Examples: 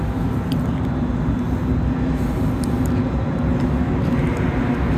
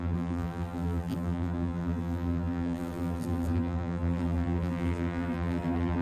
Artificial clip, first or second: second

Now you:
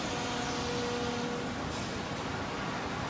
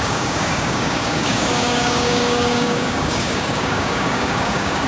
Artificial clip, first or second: second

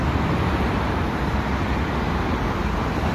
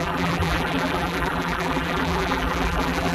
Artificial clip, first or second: second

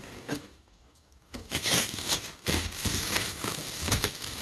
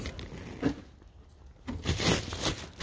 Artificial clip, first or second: first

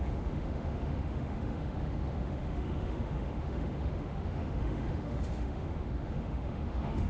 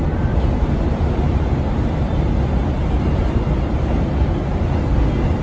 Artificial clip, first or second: first